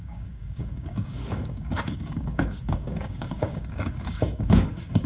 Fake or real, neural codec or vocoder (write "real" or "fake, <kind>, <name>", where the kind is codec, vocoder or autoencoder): fake, codec, DAC